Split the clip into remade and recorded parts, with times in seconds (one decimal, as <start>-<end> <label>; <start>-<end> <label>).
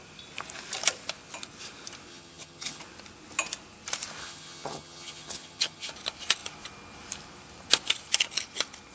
0.0-2.1 recorded; 2.1-2.8 remade; 2.8-4.2 recorded; 4.2-5.9 remade; 5.9-8.9 recorded